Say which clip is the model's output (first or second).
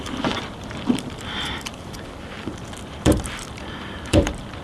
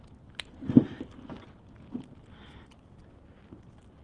first